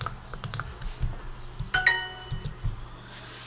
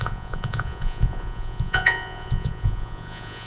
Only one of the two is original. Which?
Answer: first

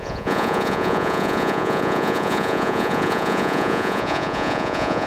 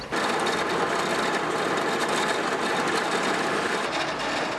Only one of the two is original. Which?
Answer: second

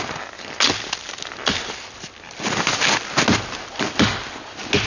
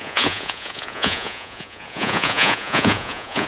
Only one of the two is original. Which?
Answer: first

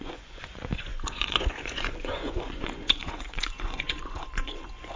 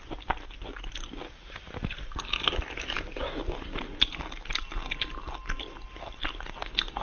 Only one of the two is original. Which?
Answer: second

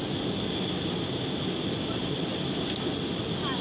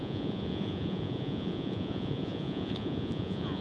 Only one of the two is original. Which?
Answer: first